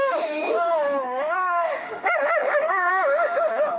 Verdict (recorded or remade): remade